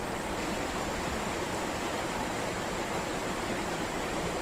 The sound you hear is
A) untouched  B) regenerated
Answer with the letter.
A